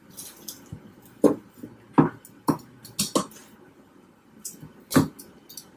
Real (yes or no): yes